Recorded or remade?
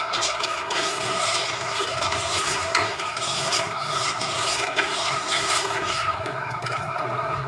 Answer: remade